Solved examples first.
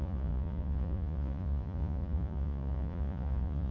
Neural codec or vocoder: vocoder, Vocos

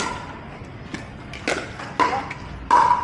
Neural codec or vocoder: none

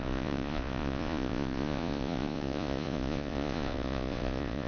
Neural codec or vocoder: vocoder, Vocos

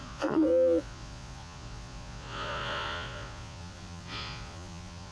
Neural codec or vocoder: vocoder, Vocos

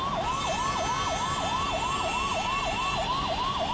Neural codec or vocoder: none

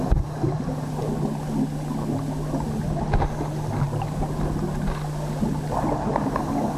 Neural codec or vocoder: none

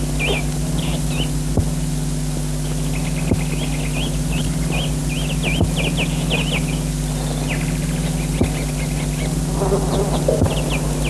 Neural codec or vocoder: none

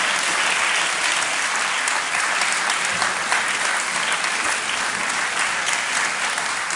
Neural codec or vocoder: none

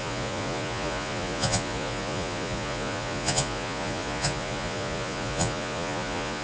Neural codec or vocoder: vocoder, Vocos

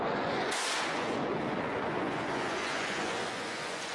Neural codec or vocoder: vocoder, Vocos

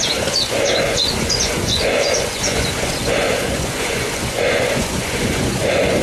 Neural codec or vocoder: vocoder, Vocos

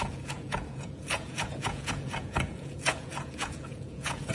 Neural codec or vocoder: vocoder, Vocos